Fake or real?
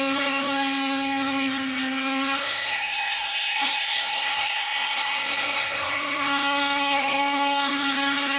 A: fake